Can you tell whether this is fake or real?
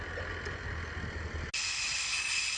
real